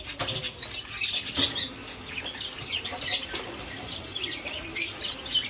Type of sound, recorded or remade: recorded